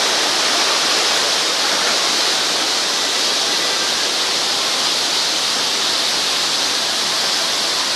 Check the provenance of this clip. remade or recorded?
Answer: recorded